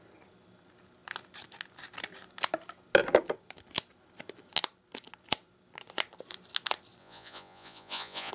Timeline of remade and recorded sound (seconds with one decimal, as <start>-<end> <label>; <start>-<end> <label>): 0.0-7.0 recorded; 7.0-8.3 remade